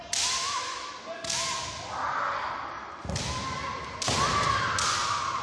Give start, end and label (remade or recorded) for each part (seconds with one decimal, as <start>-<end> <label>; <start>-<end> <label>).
0.0-0.4 recorded; 0.4-0.9 remade; 0.9-5.4 recorded